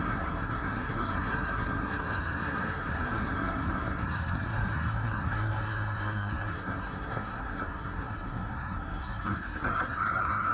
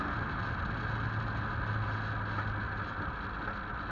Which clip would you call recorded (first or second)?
second